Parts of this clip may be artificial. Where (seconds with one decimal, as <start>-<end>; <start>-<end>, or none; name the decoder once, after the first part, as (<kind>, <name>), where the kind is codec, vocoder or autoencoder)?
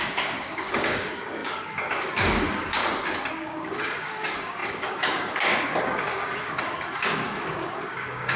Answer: 0.0-2.8 (codec, DAC); 3.3-8.4